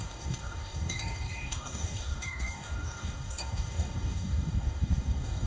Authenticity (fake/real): fake